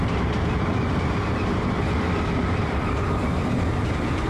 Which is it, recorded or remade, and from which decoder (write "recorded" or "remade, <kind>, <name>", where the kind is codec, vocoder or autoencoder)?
recorded